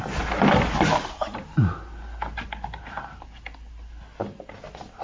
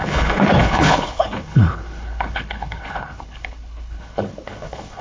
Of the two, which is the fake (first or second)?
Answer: second